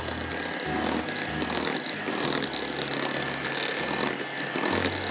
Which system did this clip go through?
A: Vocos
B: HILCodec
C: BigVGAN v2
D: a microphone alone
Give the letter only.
D